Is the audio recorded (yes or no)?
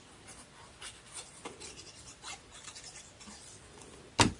yes